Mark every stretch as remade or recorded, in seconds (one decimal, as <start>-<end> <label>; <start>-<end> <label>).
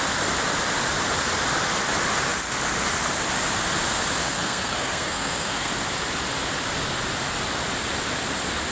0.0-4.2 recorded; 4.2-5.7 remade; 5.7-8.7 recorded